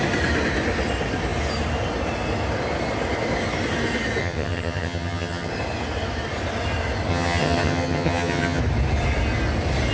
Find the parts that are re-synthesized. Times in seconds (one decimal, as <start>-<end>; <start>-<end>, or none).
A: 4.2-5.5; 7.1-8.6